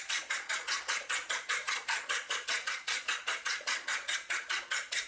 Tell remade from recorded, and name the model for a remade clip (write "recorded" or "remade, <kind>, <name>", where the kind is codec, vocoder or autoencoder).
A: remade, vocoder, Vocos